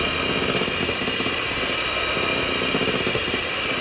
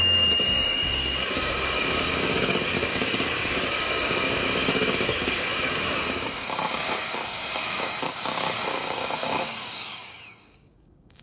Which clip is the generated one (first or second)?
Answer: second